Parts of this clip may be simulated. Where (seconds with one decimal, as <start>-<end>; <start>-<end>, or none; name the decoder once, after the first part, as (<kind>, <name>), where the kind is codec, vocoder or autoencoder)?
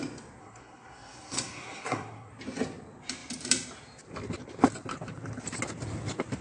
0.4-2.3 (codec, SNAC)